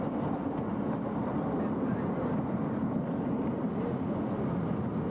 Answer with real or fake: real